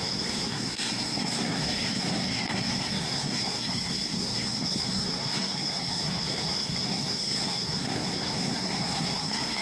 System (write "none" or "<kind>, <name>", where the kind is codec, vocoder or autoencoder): codec, SNAC